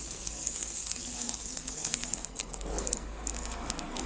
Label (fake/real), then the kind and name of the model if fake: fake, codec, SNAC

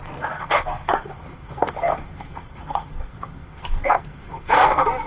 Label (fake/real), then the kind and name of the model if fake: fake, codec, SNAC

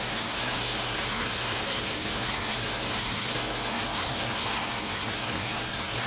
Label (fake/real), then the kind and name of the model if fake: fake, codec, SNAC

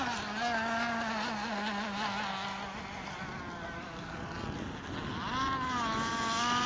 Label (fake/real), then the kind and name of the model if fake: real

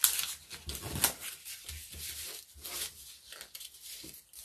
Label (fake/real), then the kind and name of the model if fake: real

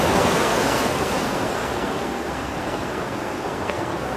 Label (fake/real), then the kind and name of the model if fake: fake, codec, SNAC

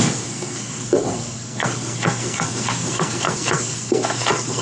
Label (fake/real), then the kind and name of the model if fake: fake, codec, SNAC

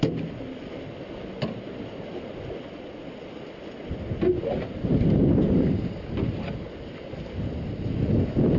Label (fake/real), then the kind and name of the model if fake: real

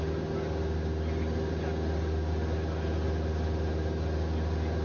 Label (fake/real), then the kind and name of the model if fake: real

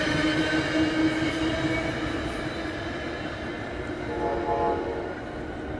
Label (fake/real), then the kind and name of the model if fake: real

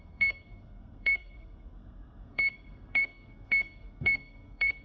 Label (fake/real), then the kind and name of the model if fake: fake, codec, SNAC